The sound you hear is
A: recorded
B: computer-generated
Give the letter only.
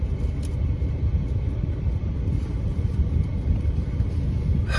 A